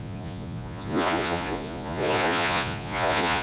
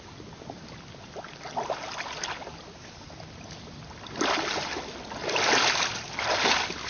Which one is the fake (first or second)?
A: first